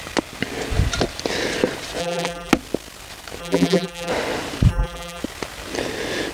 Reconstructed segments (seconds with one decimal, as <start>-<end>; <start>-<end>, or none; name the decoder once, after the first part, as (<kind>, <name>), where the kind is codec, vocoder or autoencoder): 2.0-2.5 (vocoder, BigVGAN v2); 3.4-4.1; 4.7-5.2